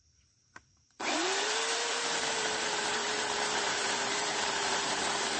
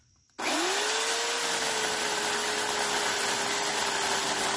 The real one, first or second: second